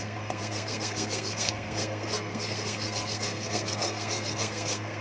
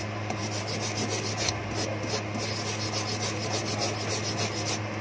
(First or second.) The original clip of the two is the second